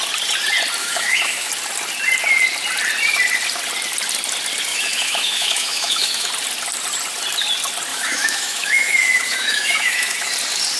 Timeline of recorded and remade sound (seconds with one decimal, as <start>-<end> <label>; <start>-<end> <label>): 0.0-0.8 recorded; 0.8-1.5 remade; 1.5-4.7 recorded; 4.7-6.3 remade; 6.3-7.9 recorded; 7.9-10.3 remade; 10.3-10.8 recorded